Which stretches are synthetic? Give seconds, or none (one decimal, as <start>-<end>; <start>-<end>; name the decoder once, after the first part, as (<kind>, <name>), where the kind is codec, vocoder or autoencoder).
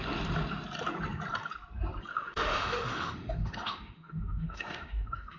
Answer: 2.1-5.4 (autoencoder, DAC-VAE)